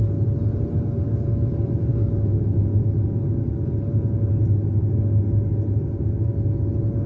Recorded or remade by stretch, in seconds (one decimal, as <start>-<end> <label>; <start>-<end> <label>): 0.0-1.9 recorded; 1.9-2.6 remade; 2.6-7.1 recorded